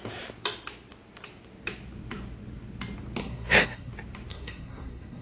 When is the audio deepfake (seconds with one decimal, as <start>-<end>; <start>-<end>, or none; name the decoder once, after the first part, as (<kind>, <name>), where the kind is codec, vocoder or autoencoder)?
3.2-3.9 (codec, SNAC); 4.3-5.2